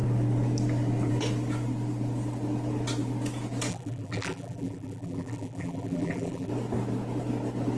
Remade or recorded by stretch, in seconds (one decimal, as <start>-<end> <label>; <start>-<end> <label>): 0.0-3.7 recorded; 3.7-6.5 remade; 6.5-7.8 recorded